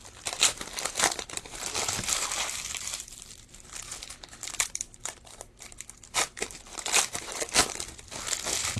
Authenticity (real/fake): fake